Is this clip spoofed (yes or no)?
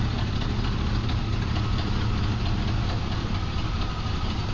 no